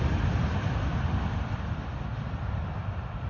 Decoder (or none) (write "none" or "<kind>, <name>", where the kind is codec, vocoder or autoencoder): none